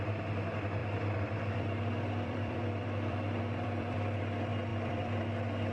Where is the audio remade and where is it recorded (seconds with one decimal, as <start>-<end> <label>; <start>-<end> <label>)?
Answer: 0.0-0.8 recorded; 0.8-4.2 remade; 4.2-4.7 recorded; 4.7-5.2 remade; 5.2-5.7 recorded